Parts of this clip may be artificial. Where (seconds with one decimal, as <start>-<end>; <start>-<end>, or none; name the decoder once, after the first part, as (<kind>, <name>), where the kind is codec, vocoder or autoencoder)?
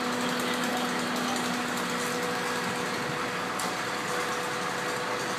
none